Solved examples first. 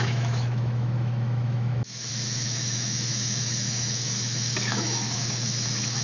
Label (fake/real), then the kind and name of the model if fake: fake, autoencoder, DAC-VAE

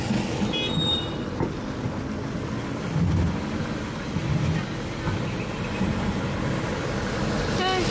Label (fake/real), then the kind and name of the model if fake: real